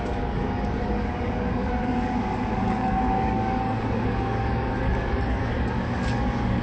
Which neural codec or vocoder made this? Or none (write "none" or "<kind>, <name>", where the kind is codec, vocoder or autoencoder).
codec, DAC